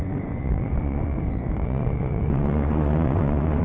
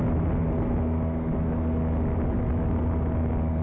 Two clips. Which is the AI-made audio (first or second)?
first